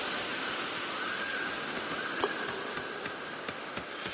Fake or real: real